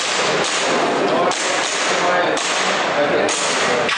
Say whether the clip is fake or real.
real